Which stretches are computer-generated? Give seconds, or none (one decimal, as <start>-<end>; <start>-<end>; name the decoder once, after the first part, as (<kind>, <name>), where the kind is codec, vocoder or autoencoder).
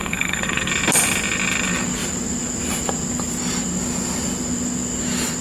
0.0-0.7 (codec, SNAC)